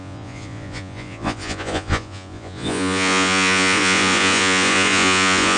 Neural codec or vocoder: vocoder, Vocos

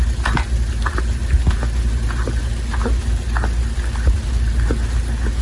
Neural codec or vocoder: none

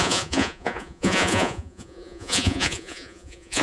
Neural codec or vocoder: vocoder, Vocos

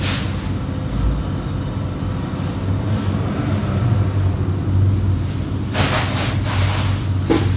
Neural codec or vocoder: none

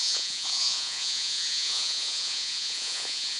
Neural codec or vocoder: vocoder, Vocos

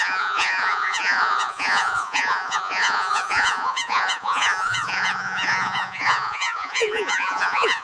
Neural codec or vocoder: vocoder, Vocos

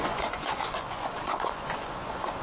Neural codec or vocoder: vocoder, Vocos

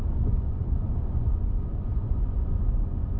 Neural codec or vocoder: vocoder, Vocos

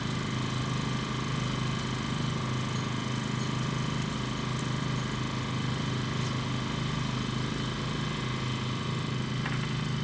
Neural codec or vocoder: none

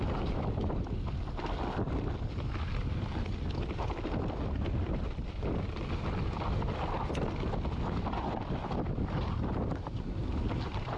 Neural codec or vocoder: none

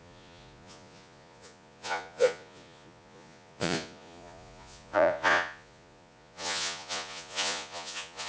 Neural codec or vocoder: vocoder, Vocos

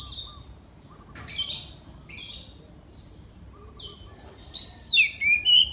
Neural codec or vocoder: none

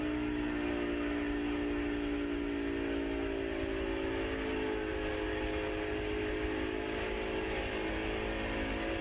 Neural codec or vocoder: none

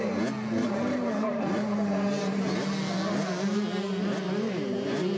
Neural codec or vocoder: none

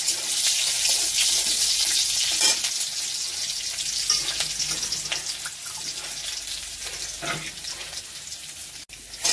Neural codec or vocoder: none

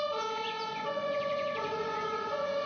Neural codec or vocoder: vocoder, Vocos